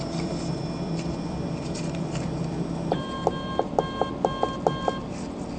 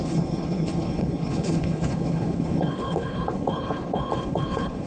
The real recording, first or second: first